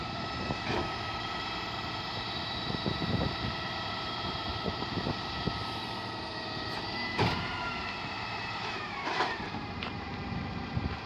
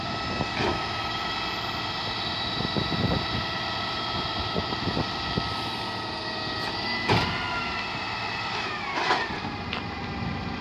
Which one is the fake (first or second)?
first